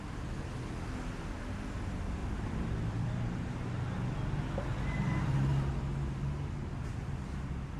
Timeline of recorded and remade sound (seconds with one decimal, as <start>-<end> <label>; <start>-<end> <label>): 0.0-2.2 recorded; 2.2-3.5 remade; 3.5-7.8 recorded